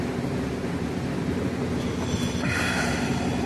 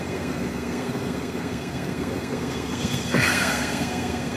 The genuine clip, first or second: first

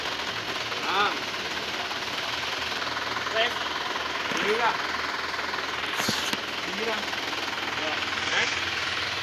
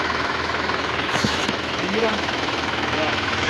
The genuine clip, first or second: first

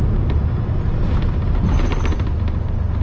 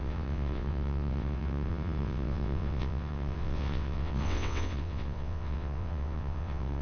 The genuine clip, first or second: first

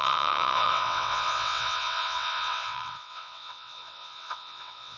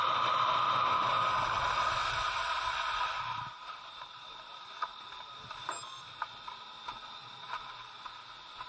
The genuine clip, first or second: second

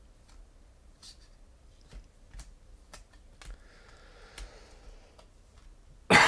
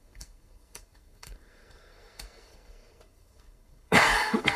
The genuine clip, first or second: first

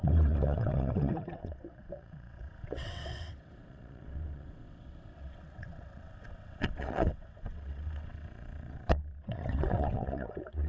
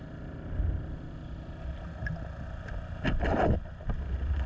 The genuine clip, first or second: second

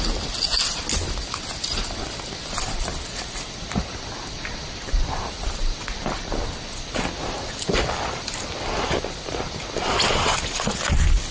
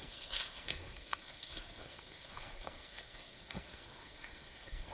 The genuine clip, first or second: first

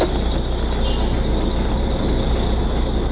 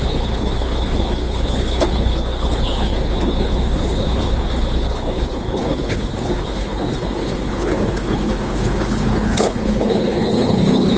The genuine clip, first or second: first